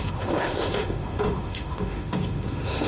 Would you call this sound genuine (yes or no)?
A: no